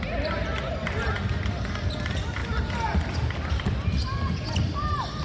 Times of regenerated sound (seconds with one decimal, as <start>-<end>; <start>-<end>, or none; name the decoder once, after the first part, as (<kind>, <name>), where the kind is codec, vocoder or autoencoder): 2.4-5.2 (vocoder, BigVGAN v2)